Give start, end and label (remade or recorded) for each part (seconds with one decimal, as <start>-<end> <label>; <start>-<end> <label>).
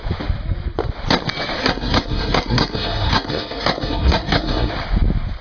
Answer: 0.0-1.6 recorded; 1.6-4.7 remade; 4.7-5.4 recorded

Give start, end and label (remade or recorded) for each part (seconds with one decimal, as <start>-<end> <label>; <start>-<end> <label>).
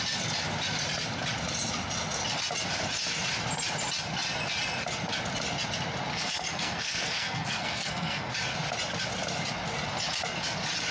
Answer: 0.0-6.1 recorded; 6.1-8.3 remade; 8.3-10.9 recorded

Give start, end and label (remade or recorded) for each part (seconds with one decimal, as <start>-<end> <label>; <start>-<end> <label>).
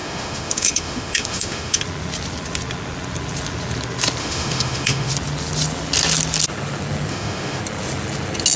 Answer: 0.0-1.8 remade; 1.8-4.2 recorded; 4.2-5.1 remade; 5.1-7.1 recorded; 7.1-7.6 remade; 7.6-8.6 recorded